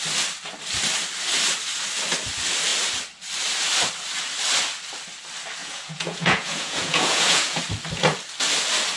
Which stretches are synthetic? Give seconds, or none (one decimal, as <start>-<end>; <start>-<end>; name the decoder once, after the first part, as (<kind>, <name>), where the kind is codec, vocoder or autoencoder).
5.6-7.6 (vocoder, Vocos)